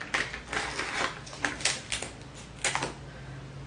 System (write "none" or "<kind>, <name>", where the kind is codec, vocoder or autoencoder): none